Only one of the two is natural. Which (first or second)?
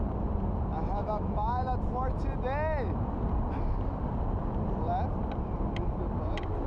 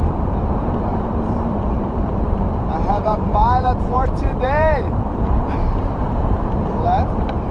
first